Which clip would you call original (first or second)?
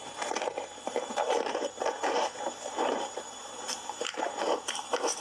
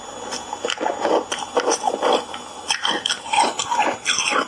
second